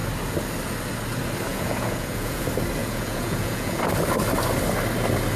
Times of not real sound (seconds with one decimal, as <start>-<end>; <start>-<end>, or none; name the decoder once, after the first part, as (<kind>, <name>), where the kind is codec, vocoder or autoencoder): 1.5-2.4 (vocoder, Vocos); 2.8-3.8